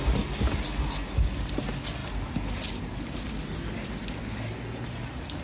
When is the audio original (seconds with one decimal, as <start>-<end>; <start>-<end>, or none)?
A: 0.0-5.4